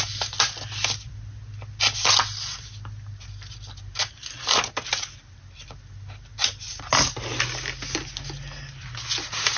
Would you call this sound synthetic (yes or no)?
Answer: no